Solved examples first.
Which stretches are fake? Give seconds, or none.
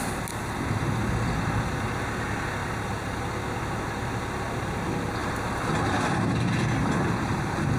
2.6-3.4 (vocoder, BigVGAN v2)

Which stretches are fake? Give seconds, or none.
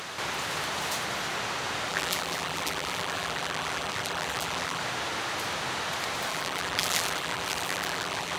1.9-4.8 (vocoder, BigVGAN v2); 6.3-8.4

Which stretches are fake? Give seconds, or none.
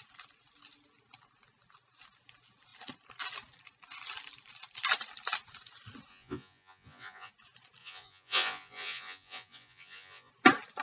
6.1-7.3 (vocoder, Vocos); 7.8-10.3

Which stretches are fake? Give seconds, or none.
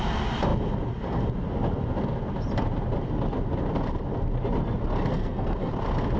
5.1-5.7 (codec, SNAC)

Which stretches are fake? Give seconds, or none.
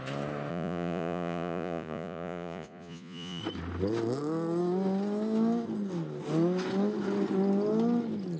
0.5-3.4 (vocoder, Vocos)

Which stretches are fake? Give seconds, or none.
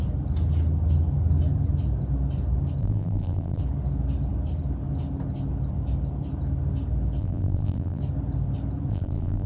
2.8-3.6 (vocoder, BigVGAN v2); 7.2-8.0; 8.9-9.5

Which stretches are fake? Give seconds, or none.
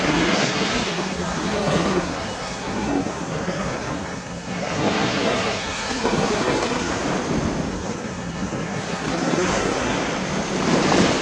0.0-7.0 (codec, SNAC); 7.7-10.0